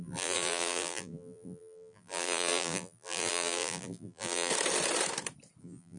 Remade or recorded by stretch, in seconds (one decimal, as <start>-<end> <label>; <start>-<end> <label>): 0.0-4.5 remade; 4.5-5.6 recorded; 5.6-6.0 remade